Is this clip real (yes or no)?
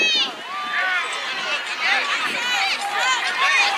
yes